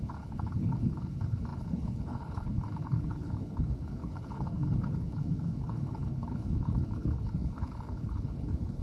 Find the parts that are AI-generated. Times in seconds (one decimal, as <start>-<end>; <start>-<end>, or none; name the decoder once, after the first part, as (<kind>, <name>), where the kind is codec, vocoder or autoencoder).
0.0-8.8 (codec, HILCodec)